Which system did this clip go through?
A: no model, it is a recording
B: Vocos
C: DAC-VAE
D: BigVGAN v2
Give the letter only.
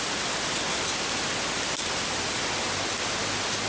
A